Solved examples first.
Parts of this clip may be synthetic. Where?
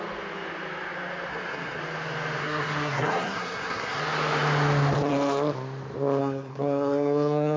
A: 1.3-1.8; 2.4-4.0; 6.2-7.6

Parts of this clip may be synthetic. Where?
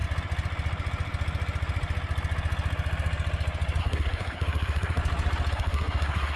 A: 3.8-5.0; 5.5-6.4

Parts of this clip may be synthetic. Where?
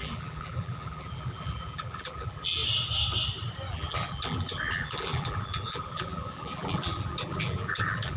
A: 0.0-2.6; 3.7-8.2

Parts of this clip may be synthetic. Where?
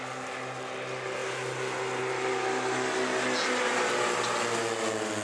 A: none